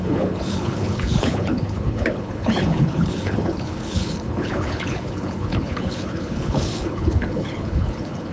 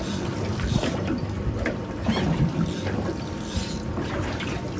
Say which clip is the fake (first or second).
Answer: first